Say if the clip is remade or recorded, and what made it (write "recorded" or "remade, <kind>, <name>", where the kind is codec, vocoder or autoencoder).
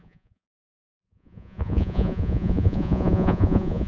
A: remade, vocoder, Vocos